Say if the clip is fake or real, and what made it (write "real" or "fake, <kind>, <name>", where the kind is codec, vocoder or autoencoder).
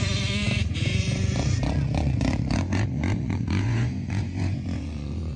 fake, vocoder, Vocos